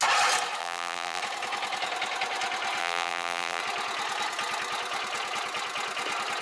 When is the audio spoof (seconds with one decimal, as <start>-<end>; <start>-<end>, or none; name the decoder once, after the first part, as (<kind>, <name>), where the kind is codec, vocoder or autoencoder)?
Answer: 0.6-1.2 (vocoder, BigVGAN v2); 2.8-3.6